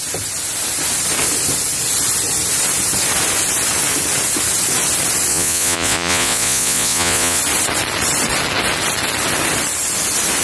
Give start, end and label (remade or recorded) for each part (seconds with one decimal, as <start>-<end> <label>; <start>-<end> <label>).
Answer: 0.0-5.3 recorded; 5.3-7.4 remade; 7.4-10.4 recorded